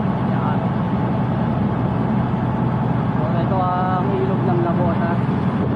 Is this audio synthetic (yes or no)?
no